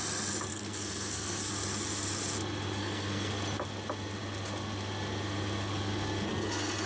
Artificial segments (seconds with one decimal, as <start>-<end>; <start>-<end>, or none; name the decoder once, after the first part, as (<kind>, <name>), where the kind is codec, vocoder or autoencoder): 0.5-1.5 (codec, SNAC); 2.8-3.3